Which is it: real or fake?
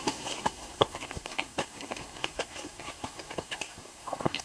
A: fake